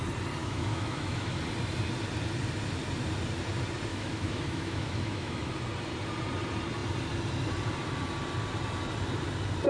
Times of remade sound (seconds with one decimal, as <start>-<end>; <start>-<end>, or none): 0.4-1.4; 3.9-5.5